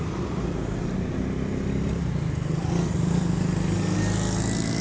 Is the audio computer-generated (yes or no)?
no